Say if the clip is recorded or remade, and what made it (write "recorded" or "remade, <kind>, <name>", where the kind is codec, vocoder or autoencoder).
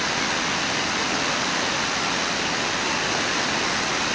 recorded